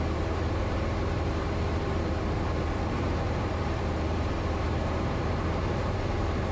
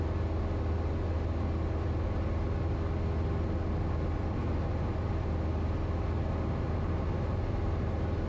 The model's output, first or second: first